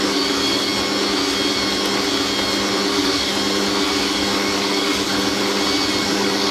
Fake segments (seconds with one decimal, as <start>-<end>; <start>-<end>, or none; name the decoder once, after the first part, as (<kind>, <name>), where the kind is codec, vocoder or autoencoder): 0.0-0.7 (codec, DAC); 2.9-3.3; 3.9-5.1; 6.0-6.5